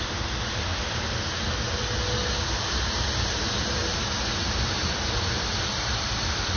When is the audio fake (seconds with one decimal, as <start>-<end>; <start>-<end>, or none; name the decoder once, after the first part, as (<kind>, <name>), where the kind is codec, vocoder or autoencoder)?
0.0-0.7 (vocoder, BigVGAN v2); 2.5-3.8; 4.4-6.6